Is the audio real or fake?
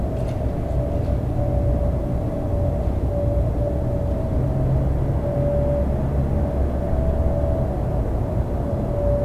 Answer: real